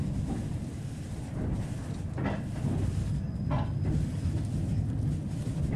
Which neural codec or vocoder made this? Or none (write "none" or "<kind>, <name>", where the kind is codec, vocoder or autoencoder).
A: none